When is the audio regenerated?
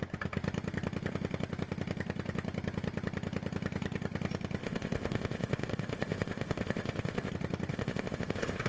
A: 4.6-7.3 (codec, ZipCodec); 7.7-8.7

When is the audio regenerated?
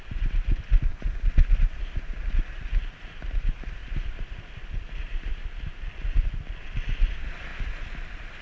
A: none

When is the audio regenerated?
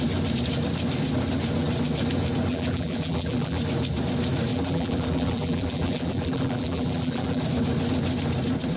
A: 2.5-3.6 (vocoder, BigVGAN v2); 4.5-7.4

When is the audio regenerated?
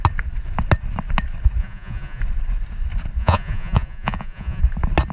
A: 1.6-2.2 (vocoder, Vocos); 3.2-4.6